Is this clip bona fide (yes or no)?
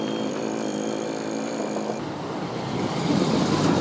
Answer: yes